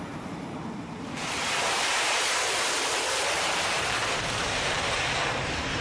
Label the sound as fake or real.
fake